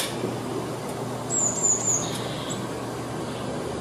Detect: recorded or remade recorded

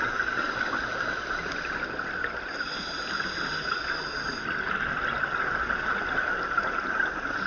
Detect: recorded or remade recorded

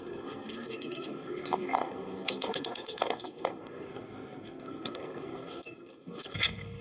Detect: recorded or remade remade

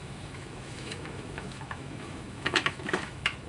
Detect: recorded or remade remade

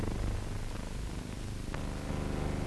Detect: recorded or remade recorded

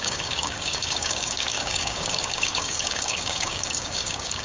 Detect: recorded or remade remade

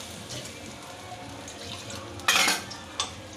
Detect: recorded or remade recorded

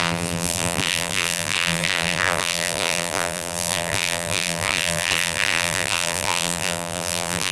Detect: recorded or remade remade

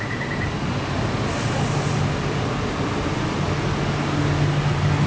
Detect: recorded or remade recorded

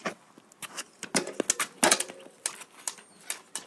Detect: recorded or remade recorded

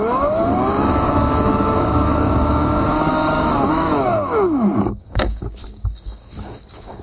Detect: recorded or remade remade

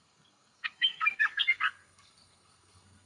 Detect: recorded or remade remade